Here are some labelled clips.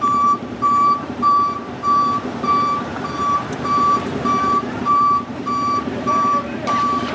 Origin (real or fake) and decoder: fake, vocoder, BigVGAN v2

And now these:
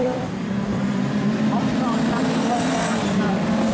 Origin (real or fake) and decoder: fake, vocoder, BigVGAN v2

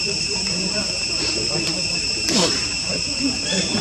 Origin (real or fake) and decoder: fake, vocoder, BigVGAN v2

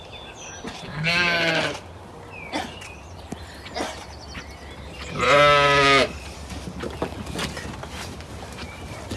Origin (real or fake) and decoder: real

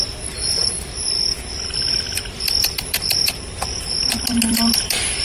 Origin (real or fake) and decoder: fake, vocoder, BigVGAN v2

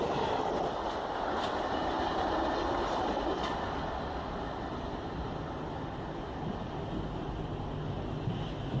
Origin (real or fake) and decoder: real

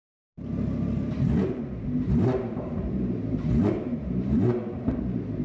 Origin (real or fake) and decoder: fake, vocoder, BigVGAN v2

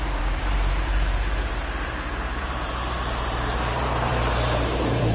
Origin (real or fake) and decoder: fake, vocoder, BigVGAN v2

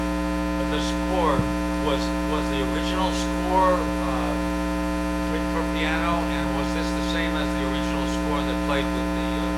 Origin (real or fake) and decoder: real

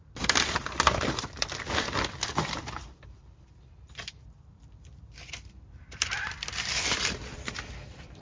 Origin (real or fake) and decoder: fake, vocoder, BigVGAN v2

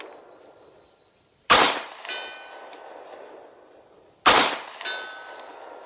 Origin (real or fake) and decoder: real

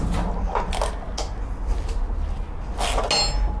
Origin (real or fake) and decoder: real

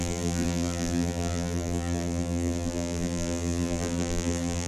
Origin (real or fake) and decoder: fake, vocoder, BigVGAN v2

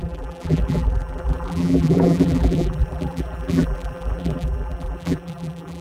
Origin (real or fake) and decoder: fake, vocoder, BigVGAN v2